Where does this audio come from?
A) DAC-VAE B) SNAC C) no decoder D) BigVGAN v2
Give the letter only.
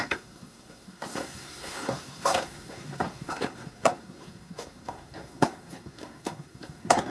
B